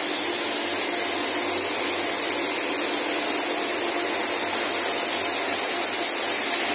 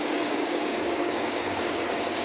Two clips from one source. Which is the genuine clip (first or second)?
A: first